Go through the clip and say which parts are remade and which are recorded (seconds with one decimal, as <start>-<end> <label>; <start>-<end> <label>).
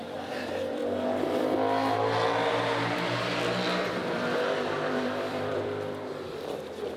0.0-0.8 remade; 0.8-4.0 recorded; 4.0-7.0 remade